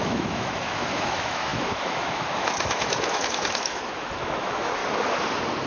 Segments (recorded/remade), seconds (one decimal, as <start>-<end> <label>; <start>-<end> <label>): 0.0-4.8 remade; 4.8-5.7 recorded